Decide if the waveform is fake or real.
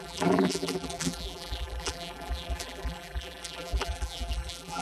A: fake